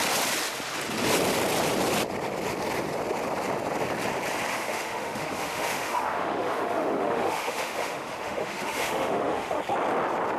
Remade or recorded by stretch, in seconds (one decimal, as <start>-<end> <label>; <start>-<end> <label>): 0.0-4.5 recorded; 4.5-9.6 remade; 9.6-10.4 recorded